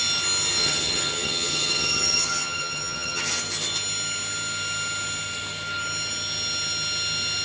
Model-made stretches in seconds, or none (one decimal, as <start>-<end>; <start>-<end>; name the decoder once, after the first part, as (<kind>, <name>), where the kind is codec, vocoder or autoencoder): 0.6-3.2 (vocoder, HiFi-GAN)